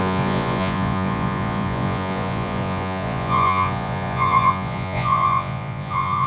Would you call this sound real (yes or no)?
no